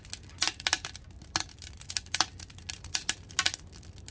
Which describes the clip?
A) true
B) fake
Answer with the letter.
A